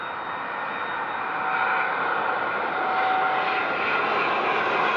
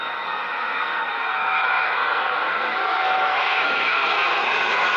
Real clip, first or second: first